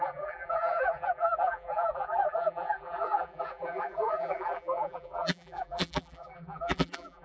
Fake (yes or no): yes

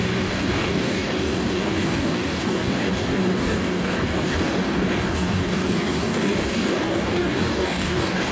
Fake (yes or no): yes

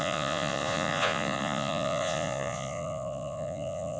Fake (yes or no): yes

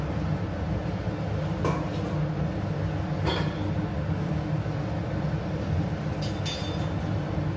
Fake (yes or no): no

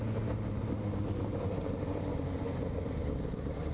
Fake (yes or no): yes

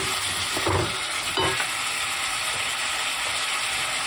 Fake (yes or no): no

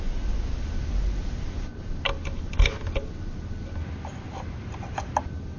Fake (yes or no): no